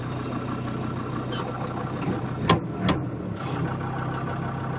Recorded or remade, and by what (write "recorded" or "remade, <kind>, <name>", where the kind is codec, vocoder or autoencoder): recorded